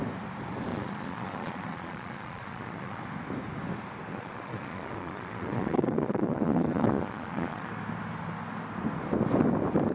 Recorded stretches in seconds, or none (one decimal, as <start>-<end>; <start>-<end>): 0.0-0.7; 3.0-4.1; 7.7-9.9